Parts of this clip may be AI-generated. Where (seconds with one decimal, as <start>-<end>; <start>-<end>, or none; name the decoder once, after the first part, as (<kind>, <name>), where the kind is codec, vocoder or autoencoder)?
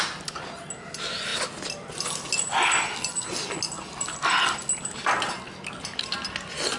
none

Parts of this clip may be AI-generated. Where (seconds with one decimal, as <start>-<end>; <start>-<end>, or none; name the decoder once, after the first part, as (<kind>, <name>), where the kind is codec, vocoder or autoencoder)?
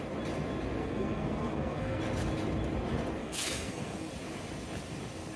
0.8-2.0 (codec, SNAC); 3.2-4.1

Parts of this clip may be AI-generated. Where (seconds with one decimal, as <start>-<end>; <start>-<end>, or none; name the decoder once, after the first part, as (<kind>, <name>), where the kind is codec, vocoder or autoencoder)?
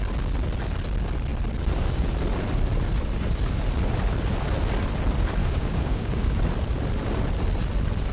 5.4-6.4 (codec, DAC)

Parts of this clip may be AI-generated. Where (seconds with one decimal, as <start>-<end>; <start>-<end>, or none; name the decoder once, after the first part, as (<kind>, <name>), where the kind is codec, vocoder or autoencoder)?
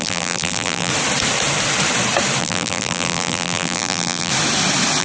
0.0-0.9 (vocoder, BigVGAN v2); 2.4-4.3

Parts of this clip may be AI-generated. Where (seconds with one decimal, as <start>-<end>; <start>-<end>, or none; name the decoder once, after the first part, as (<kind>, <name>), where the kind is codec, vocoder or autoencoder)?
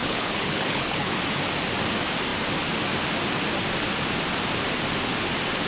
0.0-1.2 (codec, HILCodec)